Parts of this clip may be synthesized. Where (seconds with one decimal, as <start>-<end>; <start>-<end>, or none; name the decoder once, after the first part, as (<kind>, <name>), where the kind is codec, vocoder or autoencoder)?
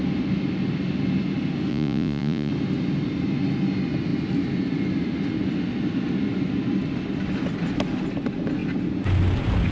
1.7-2.5 (vocoder, Vocos)